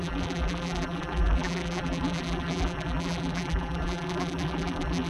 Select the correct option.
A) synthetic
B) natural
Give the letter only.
A